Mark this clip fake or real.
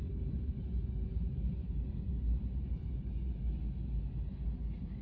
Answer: real